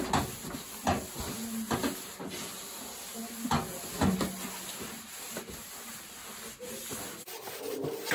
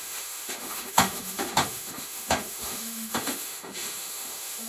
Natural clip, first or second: first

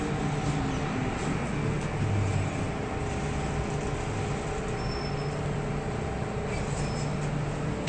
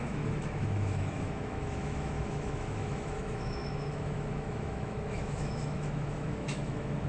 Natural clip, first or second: first